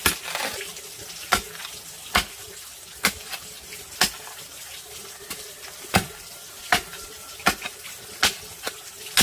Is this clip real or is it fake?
real